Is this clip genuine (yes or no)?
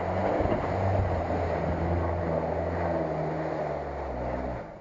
yes